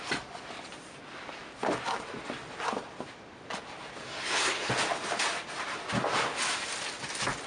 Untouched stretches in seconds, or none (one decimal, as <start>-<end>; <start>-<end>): 0.0-4.0; 4.7-7.5